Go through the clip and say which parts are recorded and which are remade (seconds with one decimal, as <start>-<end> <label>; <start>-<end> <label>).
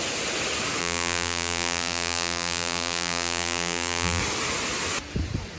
0.0-0.8 recorded; 0.8-4.2 remade; 4.2-5.6 recorded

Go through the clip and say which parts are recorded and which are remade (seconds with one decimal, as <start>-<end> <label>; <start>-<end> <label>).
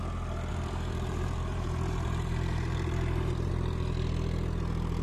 0.0-0.5 recorded; 0.5-3.5 remade; 3.5-5.0 recorded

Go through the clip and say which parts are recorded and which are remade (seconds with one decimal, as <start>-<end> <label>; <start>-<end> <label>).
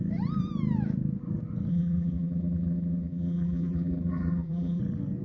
0.0-1.7 recorded; 1.7-4.8 remade; 4.8-5.2 recorded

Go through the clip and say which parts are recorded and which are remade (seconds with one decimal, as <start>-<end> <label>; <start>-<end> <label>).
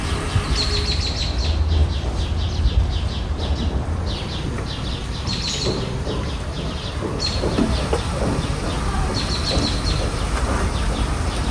0.0-5.0 recorded; 5.0-9.1 remade; 9.1-11.5 recorded